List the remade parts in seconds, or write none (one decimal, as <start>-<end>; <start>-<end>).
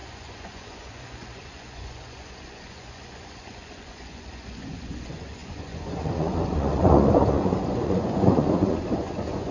0.0-9.5